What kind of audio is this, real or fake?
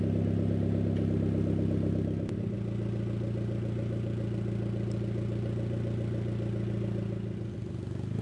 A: real